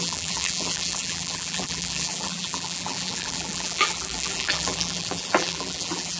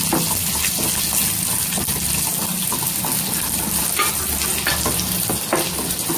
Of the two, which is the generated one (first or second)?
first